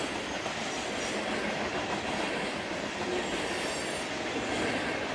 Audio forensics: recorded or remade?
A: recorded